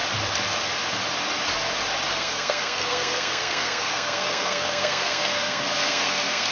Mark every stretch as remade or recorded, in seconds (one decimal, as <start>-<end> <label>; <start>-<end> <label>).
0.0-2.1 recorded; 2.1-6.5 remade